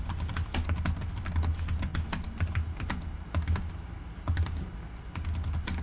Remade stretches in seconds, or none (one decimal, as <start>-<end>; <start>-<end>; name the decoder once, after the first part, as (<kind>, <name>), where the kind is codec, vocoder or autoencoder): none

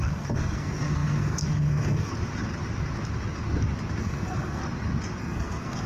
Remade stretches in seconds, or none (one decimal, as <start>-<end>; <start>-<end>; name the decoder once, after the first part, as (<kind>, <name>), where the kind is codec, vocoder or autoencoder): 0.0-2.1 (codec, SNAC); 4.0-4.6; 5.2-5.9